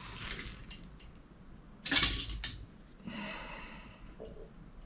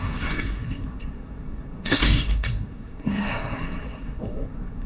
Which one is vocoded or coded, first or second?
second